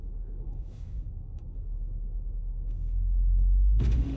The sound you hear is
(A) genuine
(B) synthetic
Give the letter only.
B